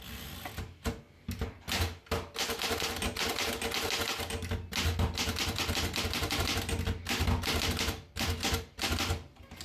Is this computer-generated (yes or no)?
no